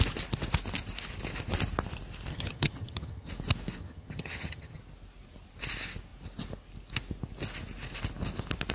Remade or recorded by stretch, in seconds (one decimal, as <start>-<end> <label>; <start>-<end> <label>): 0.0-2.3 recorded; 2.3-3.3 remade; 3.3-3.8 recorded; 3.8-4.8 remade; 4.8-8.7 recorded